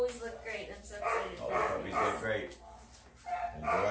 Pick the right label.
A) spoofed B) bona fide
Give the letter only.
B